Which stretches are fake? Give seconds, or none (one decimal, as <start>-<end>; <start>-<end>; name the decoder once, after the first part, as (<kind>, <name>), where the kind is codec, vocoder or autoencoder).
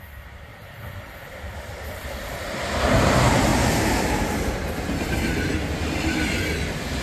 0.0-3.5 (vocoder, BigVGAN v2)